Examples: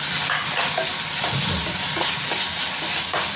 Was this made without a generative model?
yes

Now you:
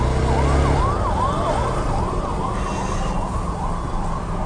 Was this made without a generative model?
yes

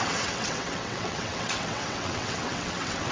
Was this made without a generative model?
no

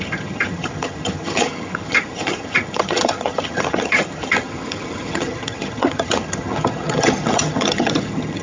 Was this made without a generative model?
no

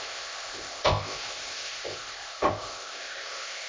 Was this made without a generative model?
no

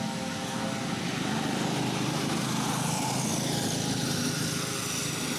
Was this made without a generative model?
yes